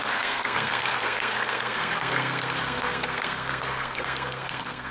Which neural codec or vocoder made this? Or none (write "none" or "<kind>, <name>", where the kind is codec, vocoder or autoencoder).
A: codec, SNAC